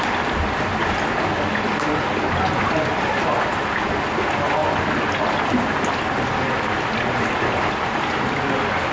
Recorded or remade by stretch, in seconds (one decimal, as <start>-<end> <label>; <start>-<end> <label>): 0.0-8.9 recorded